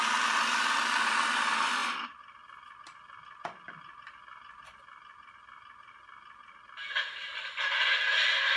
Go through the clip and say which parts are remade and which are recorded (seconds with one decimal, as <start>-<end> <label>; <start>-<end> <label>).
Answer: 0.0-8.6 recorded